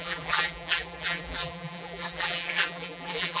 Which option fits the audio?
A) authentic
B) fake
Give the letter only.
B